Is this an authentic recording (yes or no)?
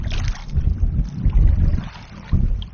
yes